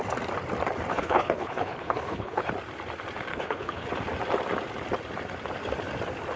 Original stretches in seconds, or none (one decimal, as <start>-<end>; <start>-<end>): 0.0-0.9; 2.5-3.3; 3.9-6.4